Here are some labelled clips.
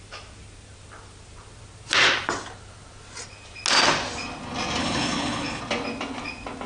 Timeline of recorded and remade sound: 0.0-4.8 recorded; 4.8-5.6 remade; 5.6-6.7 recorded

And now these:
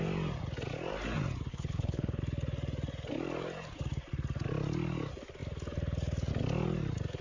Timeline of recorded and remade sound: 0.0-1.5 recorded; 1.5-2.2 remade; 2.2-7.2 recorded